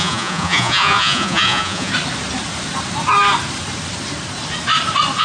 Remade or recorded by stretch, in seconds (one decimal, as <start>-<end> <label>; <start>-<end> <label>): 0.0-1.9 remade; 1.9-5.2 recorded